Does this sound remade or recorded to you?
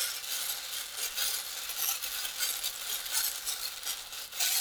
recorded